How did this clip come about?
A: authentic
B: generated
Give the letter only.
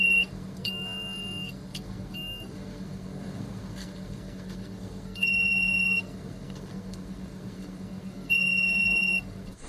B